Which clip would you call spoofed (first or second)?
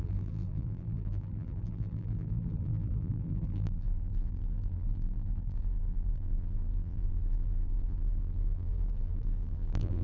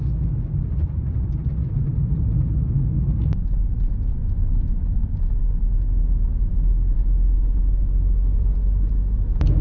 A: first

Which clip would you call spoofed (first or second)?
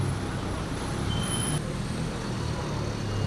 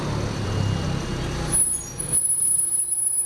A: second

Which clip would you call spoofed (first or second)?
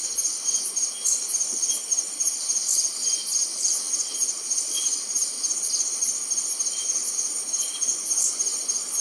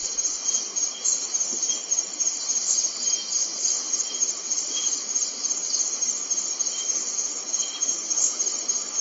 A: second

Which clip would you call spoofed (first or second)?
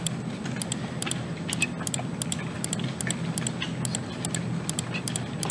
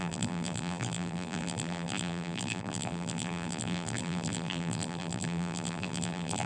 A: second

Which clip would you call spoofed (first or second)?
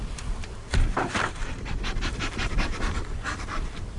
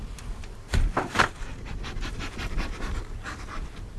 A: first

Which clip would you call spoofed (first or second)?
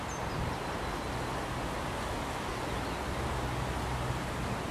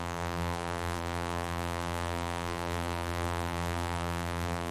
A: second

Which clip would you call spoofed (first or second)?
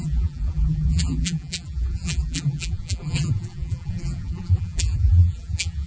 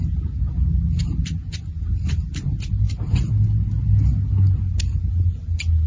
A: first